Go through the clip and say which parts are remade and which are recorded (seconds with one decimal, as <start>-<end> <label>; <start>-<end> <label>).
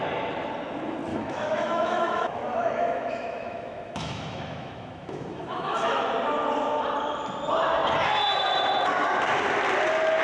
0.0-1.1 recorded; 1.1-6.1 remade; 6.1-10.2 recorded